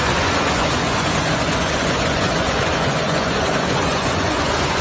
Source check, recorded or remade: remade